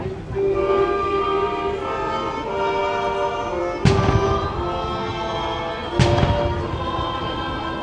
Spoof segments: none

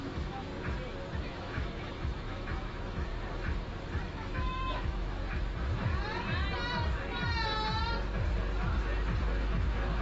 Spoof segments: 0.0-0.5 (autoencoder, DAC-VAE); 1.2-3.1; 4.0-5.2; 9.2-10.0